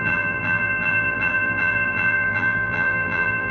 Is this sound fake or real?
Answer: fake